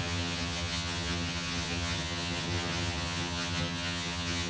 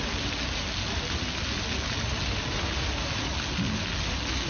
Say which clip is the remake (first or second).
first